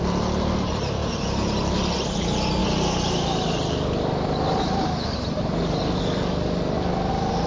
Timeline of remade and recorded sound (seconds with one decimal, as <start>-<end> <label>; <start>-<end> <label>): 0.0-7.5 recorded